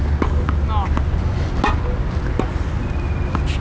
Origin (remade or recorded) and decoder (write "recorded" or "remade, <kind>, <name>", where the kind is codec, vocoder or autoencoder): recorded